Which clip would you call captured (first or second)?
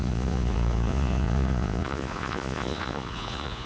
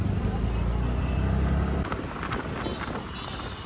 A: second